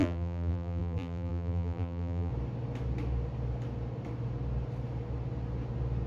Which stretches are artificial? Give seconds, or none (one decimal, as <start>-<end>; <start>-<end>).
0.0-2.3